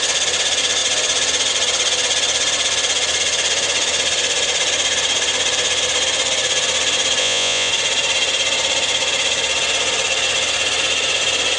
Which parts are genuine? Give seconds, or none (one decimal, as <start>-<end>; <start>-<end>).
0.0-7.2; 7.7-11.6